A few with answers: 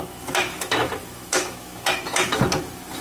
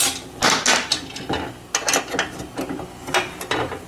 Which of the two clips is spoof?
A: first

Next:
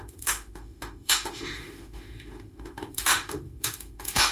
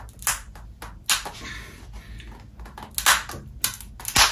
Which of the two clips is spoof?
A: first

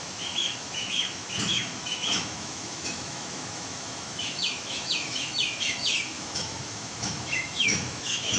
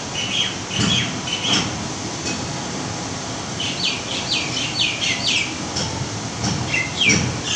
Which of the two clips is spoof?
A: first